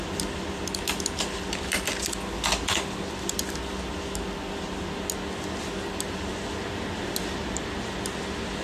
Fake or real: real